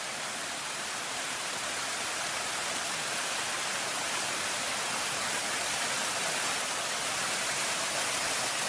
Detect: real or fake real